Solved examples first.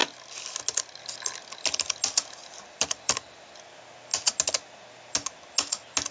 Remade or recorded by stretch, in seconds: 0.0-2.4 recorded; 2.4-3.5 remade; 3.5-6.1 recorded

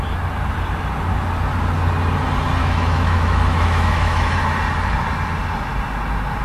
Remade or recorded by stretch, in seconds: 0.0-2.6 recorded; 2.6-4.4 remade; 4.4-6.4 recorded

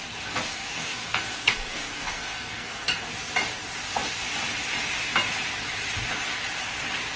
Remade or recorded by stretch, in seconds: 0.0-0.5 recorded; 0.5-3.1 remade; 3.1-7.2 recorded

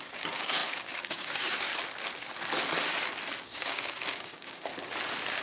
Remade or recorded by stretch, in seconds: 0.0-1.7 remade; 1.7-3.4 recorded; 3.4-4.7 remade; 4.7-5.4 recorded

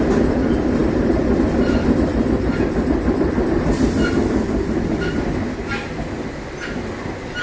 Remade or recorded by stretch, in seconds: 0.0-0.8 recorded; 0.8-5.2 remade; 5.2-7.4 recorded